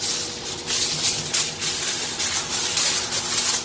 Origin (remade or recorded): recorded